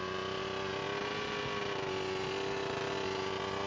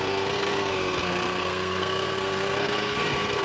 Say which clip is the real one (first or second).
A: first